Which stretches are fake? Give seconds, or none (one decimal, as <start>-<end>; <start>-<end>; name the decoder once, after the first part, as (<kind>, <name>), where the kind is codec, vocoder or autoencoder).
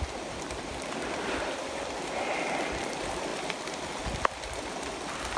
none